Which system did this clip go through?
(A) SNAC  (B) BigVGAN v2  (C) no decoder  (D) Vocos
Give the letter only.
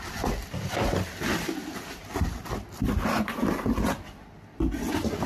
C